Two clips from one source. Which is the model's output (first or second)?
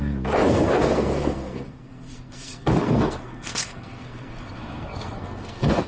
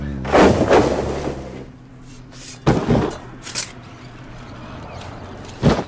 first